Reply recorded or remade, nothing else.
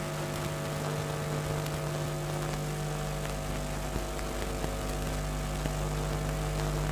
recorded